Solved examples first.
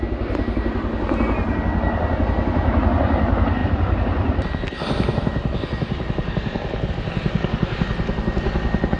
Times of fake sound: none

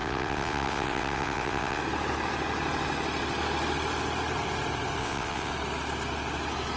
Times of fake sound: 0.0-1.8 (vocoder, WaveNeXt); 5.0-5.5

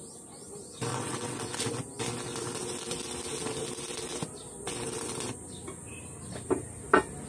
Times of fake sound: 0.9-1.4 (vocoder, WaveNeXt)

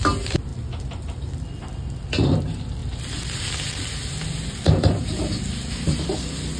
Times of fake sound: none